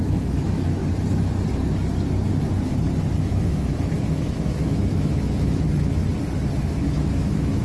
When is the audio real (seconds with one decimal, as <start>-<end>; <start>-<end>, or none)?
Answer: 0.8-3.2; 6.0-6.6